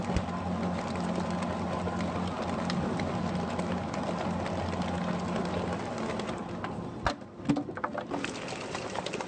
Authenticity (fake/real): real